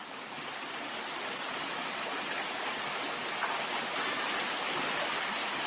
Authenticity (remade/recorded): recorded